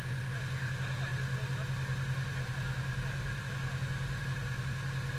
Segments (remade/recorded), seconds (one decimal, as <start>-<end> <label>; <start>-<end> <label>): 0.0-5.2 recorded